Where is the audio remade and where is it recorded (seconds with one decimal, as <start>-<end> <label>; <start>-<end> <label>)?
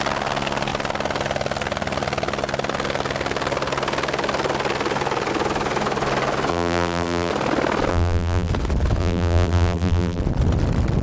0.0-6.5 recorded; 6.5-7.3 remade; 7.3-7.9 recorded; 7.9-8.5 remade; 8.5-9.0 recorded; 9.0-10.2 remade; 10.2-11.0 recorded